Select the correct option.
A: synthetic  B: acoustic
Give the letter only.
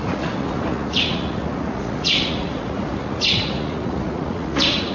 A